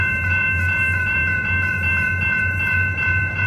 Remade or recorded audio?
remade